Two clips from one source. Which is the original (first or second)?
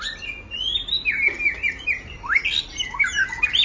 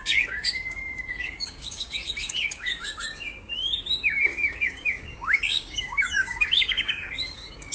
first